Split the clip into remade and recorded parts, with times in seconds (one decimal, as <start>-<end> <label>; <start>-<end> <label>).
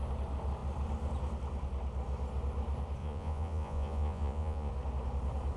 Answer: 0.0-3.0 recorded; 3.0-4.7 remade; 4.7-5.6 recorded